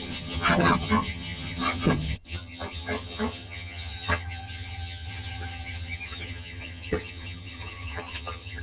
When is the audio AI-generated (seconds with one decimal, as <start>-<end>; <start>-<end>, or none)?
0.0-8.6